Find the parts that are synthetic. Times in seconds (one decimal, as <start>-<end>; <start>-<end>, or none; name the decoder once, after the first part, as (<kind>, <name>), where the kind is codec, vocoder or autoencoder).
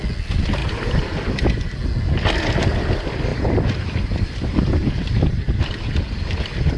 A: 3.3-4.9 (vocoder, BigVGAN v2)